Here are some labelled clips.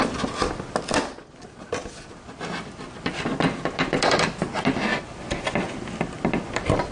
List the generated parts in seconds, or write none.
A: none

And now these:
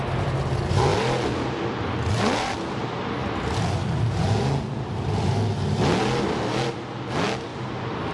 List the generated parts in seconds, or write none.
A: none

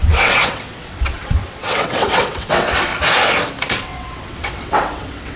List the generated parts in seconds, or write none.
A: 0.0-2.9 (vocoder, WaveNeXt); 3.8-5.4

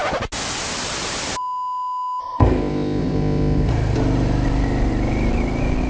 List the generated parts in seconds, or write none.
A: 2.2-3.7 (codec, ZipCodec)

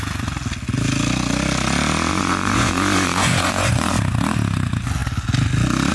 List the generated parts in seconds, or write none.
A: 2.1-3.9 (vocoder, Vocos)

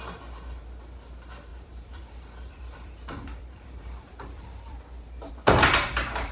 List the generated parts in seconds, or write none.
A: 1.5-5.3 (vocoder, BigVGAN v2)

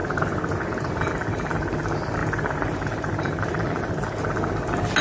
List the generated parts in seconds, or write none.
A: 0.0-1.1 (vocoder, BigVGAN v2); 2.2-3.8

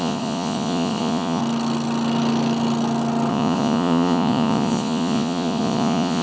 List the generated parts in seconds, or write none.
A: 0.0-1.4 (vocoder, Vocos); 3.3-6.2